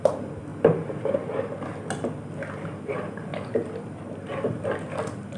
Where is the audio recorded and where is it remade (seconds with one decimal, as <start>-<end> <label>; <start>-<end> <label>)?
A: 0.0-3.3 recorded; 3.3-4.2 remade; 4.2-5.4 recorded